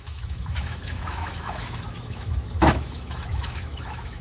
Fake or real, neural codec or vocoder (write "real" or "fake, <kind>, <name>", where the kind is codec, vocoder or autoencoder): fake, autoencoder, DAC-VAE